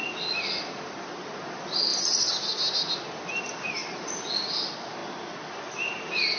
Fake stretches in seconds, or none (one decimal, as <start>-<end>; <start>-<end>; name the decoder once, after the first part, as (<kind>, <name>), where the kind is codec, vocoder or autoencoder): none